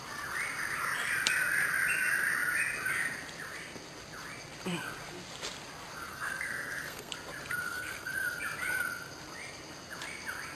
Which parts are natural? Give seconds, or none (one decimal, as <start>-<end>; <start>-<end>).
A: 0.0-6.1; 7.1-7.6; 8.1-10.6